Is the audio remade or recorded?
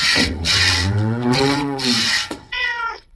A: remade